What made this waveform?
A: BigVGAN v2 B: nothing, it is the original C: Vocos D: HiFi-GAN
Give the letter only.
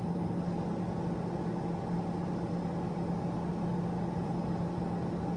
B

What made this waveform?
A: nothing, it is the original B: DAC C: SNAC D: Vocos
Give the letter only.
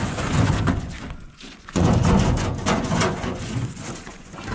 D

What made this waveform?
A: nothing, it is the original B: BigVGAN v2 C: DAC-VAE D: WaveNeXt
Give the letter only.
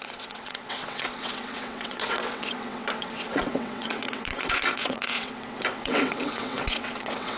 D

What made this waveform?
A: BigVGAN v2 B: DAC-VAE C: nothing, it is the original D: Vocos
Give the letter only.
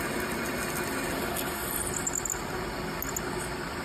C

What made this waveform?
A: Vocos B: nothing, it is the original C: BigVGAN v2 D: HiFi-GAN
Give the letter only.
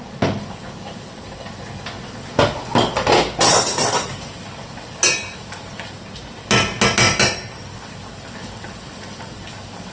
B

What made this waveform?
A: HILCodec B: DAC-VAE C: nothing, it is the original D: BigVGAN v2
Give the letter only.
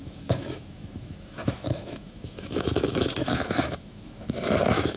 B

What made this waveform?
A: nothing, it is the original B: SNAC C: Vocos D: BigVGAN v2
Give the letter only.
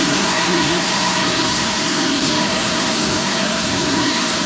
B